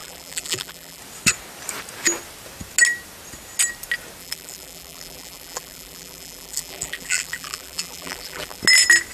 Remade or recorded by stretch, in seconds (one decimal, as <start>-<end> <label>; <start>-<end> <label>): 0.0-1.0 remade; 1.0-4.2 recorded; 4.2-8.6 remade; 8.6-9.1 recorded